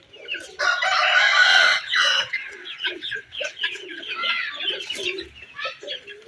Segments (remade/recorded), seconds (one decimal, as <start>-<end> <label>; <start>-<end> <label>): 0.0-1.5 recorded; 1.5-4.5 remade; 4.5-6.3 recorded